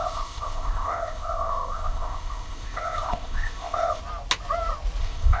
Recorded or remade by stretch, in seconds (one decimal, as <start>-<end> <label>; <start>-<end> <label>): 0.0-4.0 remade; 4.0-5.0 recorded; 5.0-5.4 remade